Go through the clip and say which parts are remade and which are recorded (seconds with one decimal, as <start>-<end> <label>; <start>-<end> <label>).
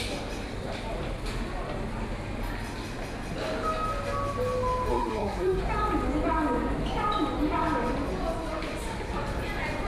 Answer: 0.0-4.9 recorded; 4.9-5.6 remade; 5.6-9.9 recorded